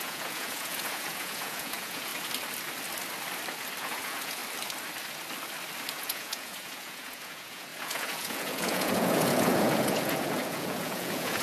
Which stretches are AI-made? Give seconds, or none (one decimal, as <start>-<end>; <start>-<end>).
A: 0.0-2.1; 3.8-4.4; 5.9-11.4